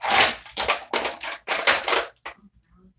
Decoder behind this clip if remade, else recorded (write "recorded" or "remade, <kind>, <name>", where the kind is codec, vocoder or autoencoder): recorded